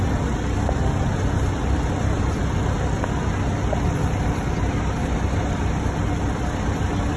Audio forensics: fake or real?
real